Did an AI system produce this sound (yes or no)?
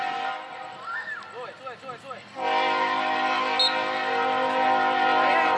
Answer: no